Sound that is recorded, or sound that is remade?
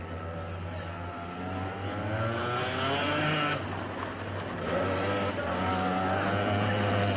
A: recorded